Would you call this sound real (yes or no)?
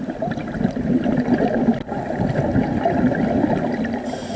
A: yes